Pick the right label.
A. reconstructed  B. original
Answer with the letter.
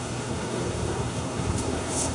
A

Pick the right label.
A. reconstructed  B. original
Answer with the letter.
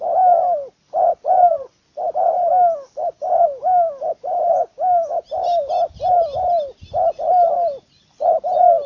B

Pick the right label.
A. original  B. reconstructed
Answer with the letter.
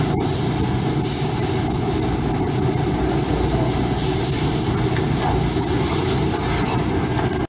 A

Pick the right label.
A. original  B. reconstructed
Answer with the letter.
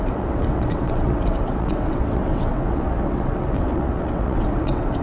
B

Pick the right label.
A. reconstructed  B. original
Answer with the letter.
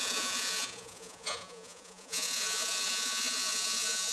A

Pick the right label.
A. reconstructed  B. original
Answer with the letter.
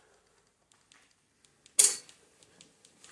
B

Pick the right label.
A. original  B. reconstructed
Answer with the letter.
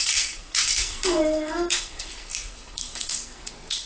B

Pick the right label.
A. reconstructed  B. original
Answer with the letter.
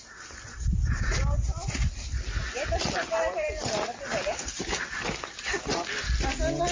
B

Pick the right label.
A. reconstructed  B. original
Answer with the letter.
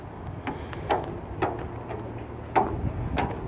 B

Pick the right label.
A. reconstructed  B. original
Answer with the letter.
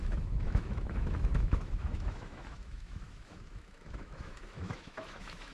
A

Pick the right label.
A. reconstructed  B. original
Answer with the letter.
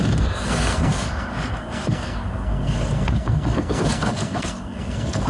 A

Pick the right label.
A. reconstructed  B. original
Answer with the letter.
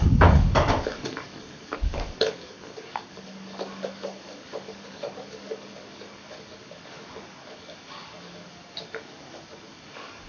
A